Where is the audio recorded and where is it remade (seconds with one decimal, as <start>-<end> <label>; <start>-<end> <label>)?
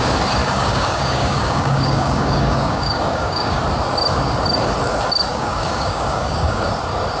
0.0-0.4 recorded; 0.4-3.6 remade; 3.6-5.3 recorded; 5.3-6.7 remade; 6.7-7.2 recorded